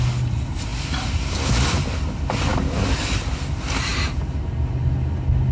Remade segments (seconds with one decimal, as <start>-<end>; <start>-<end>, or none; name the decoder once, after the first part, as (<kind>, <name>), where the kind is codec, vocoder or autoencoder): none